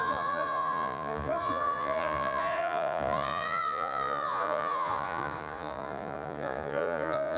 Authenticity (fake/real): fake